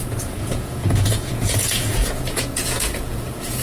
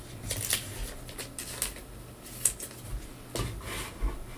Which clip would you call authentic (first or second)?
second